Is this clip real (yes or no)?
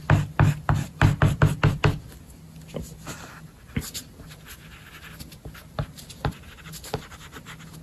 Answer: yes